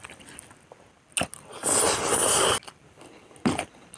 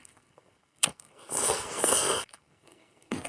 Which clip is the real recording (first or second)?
first